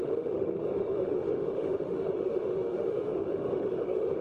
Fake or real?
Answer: fake